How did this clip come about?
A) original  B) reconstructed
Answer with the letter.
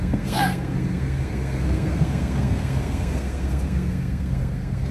B